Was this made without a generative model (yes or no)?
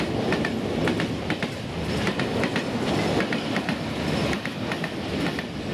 yes